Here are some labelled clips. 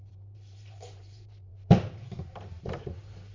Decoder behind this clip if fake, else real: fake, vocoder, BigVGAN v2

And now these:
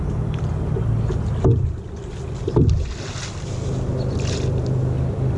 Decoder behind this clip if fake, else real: real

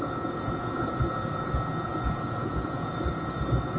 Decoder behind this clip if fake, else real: fake, vocoder, Vocos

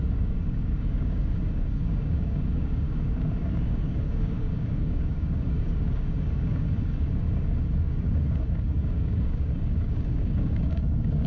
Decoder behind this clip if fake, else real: fake, codec, DAC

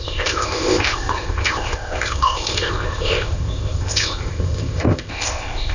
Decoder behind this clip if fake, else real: fake, codec, ZipCodec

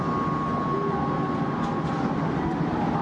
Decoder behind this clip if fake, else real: real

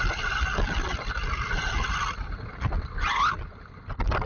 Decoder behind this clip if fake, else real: real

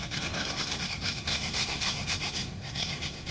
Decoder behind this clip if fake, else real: fake, codec, SNAC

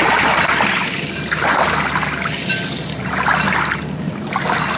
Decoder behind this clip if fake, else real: real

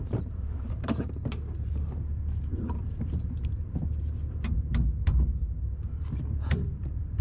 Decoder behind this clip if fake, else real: fake, vocoder, BigVGAN v2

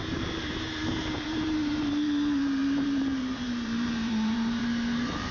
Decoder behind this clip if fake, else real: fake, vocoder, BigVGAN v2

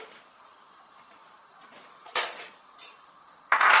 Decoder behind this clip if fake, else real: fake, vocoder, Vocos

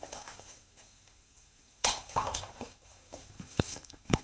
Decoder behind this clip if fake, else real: fake, codec, SNAC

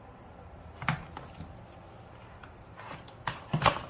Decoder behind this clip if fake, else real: real